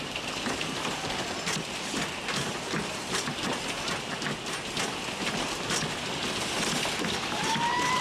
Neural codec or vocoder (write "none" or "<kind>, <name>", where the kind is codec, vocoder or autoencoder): none